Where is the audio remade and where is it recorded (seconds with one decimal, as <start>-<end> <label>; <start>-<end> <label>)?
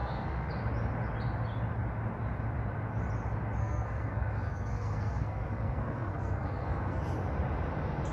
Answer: 0.0-0.5 remade; 0.5-3.6 recorded; 3.6-7.0 remade; 7.0-8.1 recorded